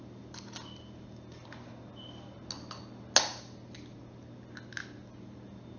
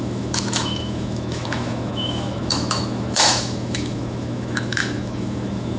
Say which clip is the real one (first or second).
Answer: first